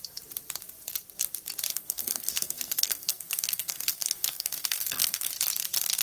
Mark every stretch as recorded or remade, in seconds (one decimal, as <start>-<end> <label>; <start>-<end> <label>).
0.0-1.7 recorded; 1.7-5.3 remade; 5.3-6.0 recorded